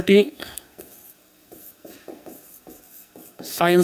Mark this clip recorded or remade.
remade